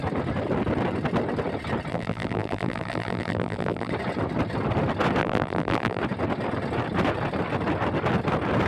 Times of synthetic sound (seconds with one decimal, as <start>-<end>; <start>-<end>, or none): 1.9-3.9; 5.2-6.0